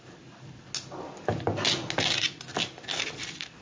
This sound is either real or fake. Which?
real